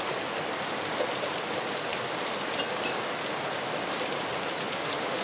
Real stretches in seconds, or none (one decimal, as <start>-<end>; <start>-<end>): 0.0-5.2